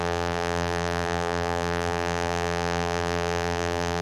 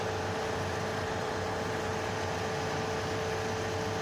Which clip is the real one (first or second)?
second